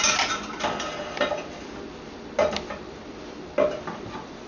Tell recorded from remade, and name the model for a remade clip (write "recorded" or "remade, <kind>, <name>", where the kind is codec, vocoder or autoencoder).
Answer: recorded